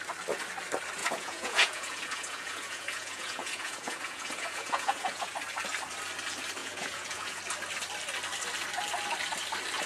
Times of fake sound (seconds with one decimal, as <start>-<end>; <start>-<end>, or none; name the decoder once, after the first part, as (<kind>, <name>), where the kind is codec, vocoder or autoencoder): 1.0-5.3 (vocoder, Vocos); 6.6-7.4